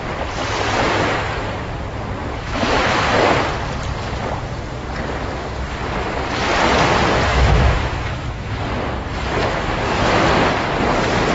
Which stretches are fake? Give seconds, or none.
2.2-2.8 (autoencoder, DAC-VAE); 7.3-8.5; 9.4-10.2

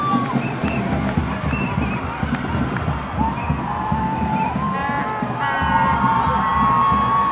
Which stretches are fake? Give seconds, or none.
none

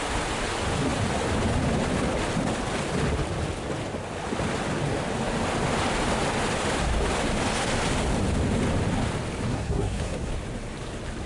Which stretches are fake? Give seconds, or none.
9.5-10.3 (codec, SNAC)

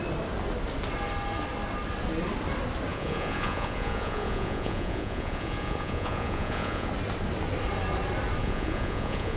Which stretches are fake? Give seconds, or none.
2.9-6.9 (vocoder, Vocos); 8.4-9.4

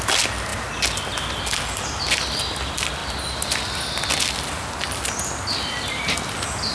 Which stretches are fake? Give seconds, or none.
none